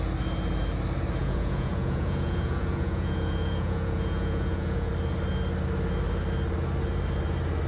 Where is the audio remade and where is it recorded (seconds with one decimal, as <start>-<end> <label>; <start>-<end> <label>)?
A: 0.0-1.2 recorded; 1.2-4.9 remade; 4.9-7.7 recorded